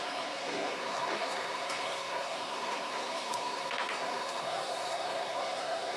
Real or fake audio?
fake